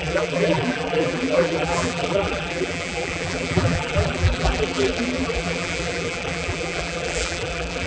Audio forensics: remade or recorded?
remade